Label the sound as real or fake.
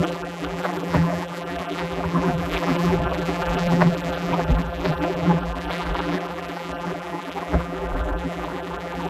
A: fake